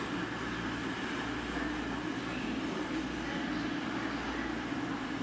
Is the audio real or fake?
real